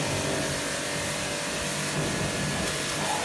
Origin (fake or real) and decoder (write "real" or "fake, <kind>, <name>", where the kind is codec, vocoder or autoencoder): real